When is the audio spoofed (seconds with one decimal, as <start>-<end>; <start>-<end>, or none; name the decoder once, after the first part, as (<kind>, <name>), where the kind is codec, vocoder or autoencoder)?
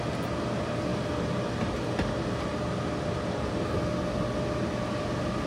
none